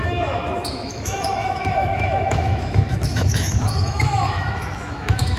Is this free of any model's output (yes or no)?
no